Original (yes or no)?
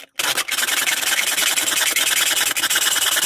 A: yes